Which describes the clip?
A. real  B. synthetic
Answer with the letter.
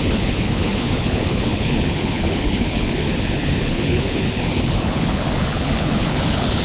B